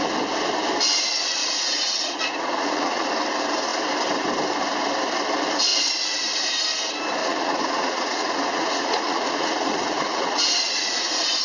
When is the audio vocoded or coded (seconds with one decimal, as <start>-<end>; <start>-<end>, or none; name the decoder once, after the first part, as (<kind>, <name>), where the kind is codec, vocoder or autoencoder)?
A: 1.4-3.1 (vocoder, Vocos); 7.2-11.4